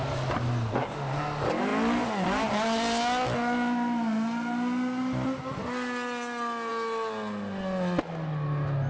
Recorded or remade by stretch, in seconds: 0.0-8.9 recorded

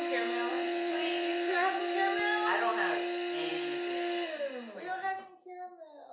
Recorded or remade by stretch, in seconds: 0.0-0.5 recorded; 0.5-1.8 remade; 1.8-6.1 recorded

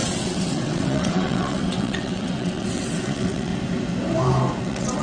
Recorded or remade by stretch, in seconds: 0.0-3.5 remade; 3.5-4.6 recorded; 4.6-5.0 remade

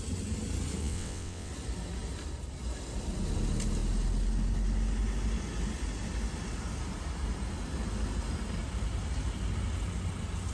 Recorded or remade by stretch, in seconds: 0.0-0.8 recorded; 0.8-1.5 remade; 1.5-10.5 recorded

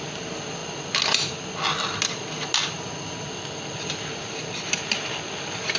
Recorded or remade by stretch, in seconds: 0.0-5.8 recorded

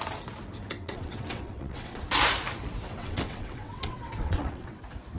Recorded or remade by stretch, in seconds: 0.0-0.8 recorded; 0.8-2.0 remade; 2.0-3.0 recorded; 3.0-4.8 remade; 4.8-5.2 recorded

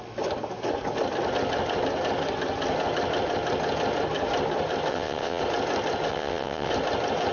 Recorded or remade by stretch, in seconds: 0.0-4.9 recorded; 4.9-5.4 remade; 5.4-6.1 recorded; 6.1-6.7 remade; 6.7-7.3 recorded